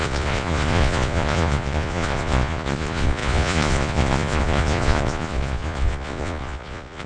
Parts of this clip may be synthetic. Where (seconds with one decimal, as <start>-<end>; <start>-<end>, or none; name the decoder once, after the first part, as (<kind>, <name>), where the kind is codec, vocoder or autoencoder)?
0.0-7.1 (vocoder, Vocos)

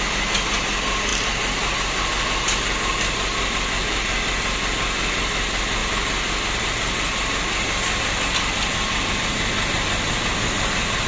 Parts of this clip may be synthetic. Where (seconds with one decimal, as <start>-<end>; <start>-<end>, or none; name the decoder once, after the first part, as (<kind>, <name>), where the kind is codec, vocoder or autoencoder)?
none